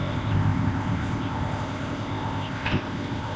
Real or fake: fake